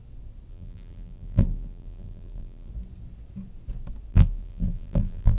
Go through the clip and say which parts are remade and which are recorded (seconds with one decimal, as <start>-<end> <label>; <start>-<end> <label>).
0.0-0.5 recorded; 0.5-2.7 remade; 2.7-4.1 recorded; 4.1-5.4 remade